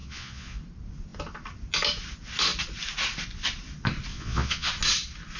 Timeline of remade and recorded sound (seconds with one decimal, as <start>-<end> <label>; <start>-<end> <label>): 0.0-0.6 remade; 0.6-4.1 recorded; 4.1-4.7 remade; 4.7-5.4 recorded